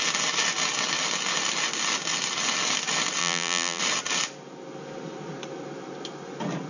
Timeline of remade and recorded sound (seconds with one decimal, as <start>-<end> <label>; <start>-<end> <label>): 0.0-3.2 recorded; 3.2-3.8 remade; 3.8-6.7 recorded